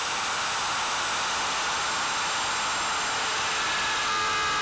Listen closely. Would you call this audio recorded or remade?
recorded